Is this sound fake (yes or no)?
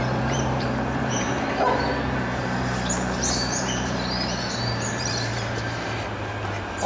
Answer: yes